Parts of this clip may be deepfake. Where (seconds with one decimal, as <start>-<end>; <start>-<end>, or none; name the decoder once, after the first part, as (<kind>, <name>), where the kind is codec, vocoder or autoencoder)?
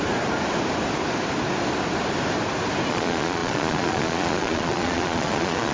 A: 2.9-5.7 (vocoder, Vocos)